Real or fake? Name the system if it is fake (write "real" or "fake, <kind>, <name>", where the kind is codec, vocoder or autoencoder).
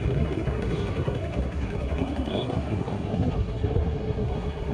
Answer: fake, codec, SNAC